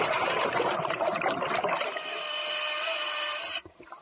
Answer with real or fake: real